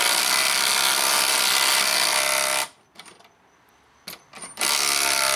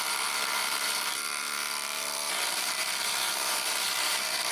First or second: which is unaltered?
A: first